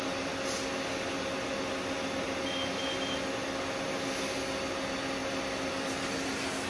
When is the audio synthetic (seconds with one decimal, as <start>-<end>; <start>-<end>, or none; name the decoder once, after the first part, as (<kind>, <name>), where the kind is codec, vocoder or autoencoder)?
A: none